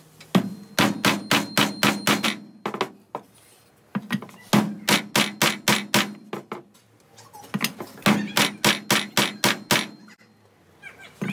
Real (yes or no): yes